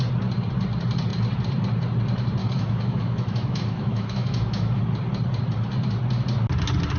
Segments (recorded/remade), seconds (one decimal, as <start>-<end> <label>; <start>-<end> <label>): 0.0-2.4 recorded; 2.4-4.8 remade; 4.8-7.0 recorded